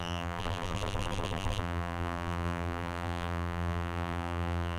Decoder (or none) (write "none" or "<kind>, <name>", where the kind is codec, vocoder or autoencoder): vocoder, BigVGAN v2